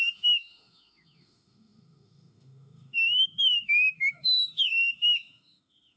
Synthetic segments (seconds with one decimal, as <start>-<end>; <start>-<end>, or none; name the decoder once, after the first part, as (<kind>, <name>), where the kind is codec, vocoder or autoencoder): 0.0-6.0 (autoencoder, DAC-VAE)